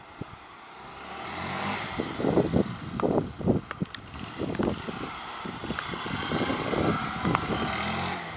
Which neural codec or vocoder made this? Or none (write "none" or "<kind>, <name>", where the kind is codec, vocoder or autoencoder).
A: none